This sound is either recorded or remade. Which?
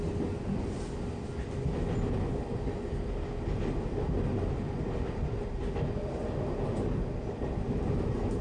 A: recorded